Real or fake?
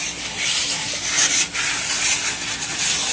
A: real